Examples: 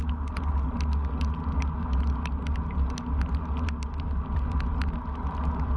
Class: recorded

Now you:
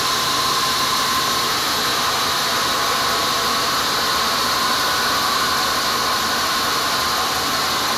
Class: recorded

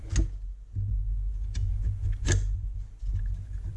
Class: recorded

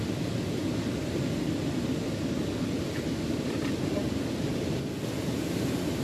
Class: recorded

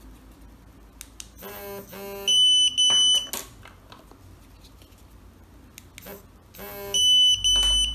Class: recorded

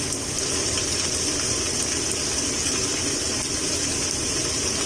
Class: remade